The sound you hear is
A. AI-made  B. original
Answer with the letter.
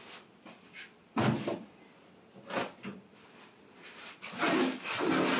B